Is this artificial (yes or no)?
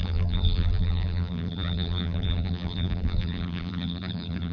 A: yes